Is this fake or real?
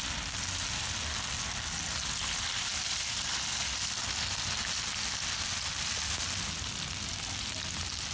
real